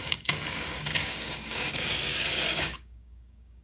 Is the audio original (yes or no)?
no